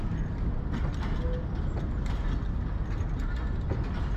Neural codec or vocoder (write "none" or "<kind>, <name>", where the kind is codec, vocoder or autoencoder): none